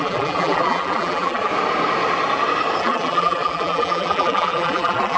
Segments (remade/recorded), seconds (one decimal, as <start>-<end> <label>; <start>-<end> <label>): 0.0-1.5 remade; 1.5-2.8 recorded; 2.8-5.2 remade